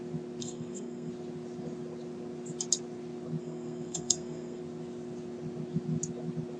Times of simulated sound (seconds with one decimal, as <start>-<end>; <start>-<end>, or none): 0.4-1.1; 3.4-4.6